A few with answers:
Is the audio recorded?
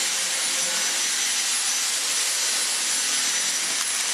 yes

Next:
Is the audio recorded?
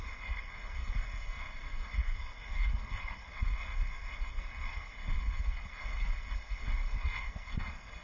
no